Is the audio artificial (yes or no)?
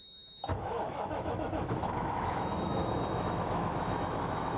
yes